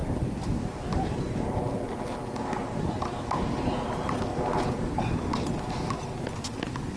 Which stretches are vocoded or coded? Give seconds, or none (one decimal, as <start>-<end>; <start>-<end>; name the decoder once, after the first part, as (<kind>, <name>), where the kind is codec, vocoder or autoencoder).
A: 0.0-1.0 (vocoder, BigVGAN v2); 4.3-5.6